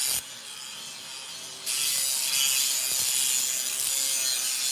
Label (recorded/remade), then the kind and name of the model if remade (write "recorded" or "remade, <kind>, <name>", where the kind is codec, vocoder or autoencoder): recorded